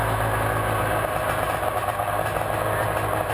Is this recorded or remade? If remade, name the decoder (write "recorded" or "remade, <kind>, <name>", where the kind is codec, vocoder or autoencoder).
recorded